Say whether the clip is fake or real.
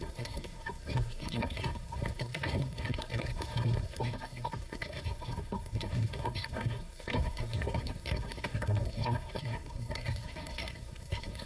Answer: fake